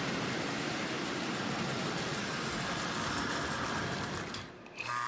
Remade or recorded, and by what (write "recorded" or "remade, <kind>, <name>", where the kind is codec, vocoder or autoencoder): remade, vocoder, BigVGAN v2